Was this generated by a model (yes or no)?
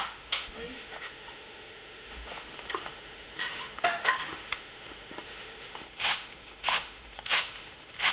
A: yes